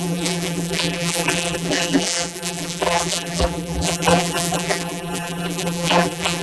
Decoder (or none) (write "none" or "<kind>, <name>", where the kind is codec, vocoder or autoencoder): vocoder, BigVGAN v2